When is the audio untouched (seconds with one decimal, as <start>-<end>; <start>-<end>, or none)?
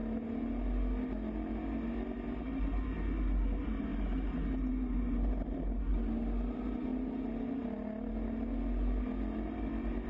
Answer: 0.0-10.1